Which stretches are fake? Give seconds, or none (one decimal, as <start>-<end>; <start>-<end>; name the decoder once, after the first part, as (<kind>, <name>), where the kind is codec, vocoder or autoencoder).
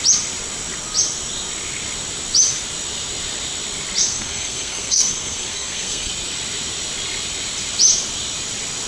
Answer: 4.0-6.1 (codec, SNAC)